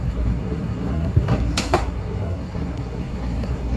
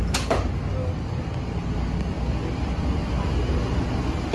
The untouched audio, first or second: second